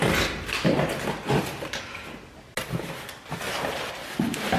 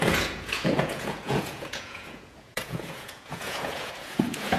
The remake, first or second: second